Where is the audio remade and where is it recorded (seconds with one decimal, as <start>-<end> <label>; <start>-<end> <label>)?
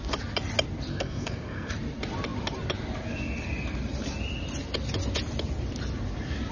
0.0-0.9 recorded; 0.9-1.7 remade; 1.7-6.5 recorded